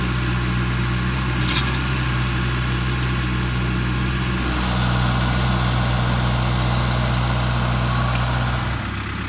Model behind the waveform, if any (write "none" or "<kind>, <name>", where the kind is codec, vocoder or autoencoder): none